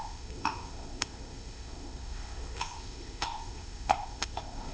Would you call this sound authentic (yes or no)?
no